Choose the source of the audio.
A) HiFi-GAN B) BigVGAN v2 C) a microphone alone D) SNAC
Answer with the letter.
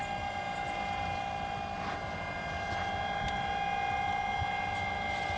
C